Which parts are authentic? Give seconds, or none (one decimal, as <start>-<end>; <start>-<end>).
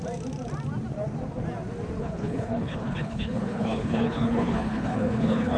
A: 0.0-2.0